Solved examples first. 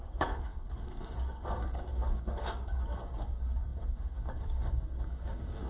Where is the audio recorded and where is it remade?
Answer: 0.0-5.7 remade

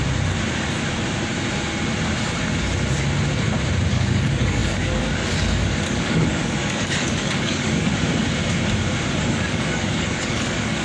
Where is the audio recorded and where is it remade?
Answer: 0.0-3.9 recorded; 3.9-7.9 remade; 7.9-9.2 recorded; 9.2-10.8 remade